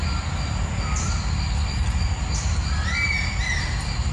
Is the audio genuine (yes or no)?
yes